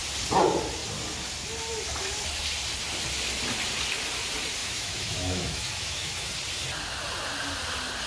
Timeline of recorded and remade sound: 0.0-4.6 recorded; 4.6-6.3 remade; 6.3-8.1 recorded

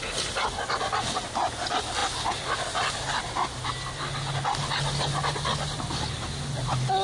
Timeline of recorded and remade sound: 0.0-7.0 recorded

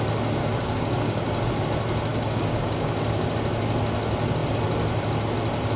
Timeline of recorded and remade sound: 0.0-0.4 recorded; 0.4-1.5 remade; 1.5-2.1 recorded; 2.1-3.3 remade; 3.3-5.8 recorded